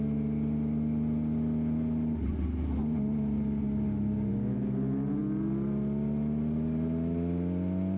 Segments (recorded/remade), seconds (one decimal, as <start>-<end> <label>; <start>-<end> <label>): 0.0-8.0 recorded